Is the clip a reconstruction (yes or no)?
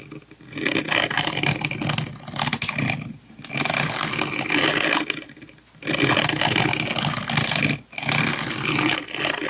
no